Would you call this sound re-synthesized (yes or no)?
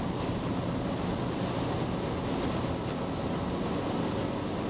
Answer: no